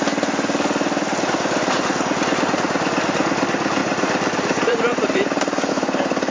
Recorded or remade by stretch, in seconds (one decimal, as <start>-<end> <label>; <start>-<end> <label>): 0.0-3.8 recorded; 3.8-5.7 remade; 5.7-6.3 recorded